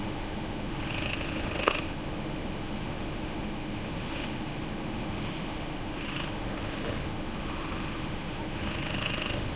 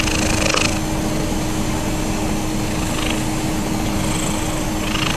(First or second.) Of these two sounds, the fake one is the first